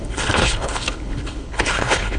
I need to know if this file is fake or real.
fake